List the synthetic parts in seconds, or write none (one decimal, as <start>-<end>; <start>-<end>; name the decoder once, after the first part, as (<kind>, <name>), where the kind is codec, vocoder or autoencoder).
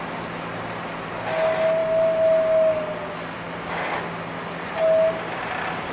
none